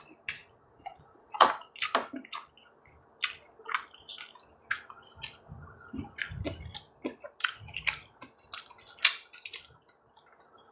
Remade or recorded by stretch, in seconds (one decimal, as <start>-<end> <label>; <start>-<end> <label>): 0.0-0.4 recorded; 0.4-1.5 remade; 1.5-10.7 recorded